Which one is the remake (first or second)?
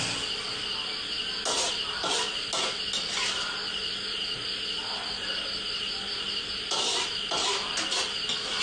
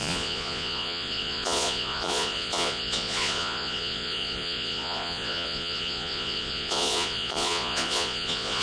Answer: second